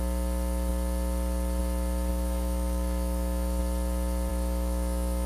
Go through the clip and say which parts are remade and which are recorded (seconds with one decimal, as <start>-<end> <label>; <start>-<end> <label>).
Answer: 0.0-2.1 recorded; 2.1-3.6 remade; 3.6-4.3 recorded; 4.3-5.3 remade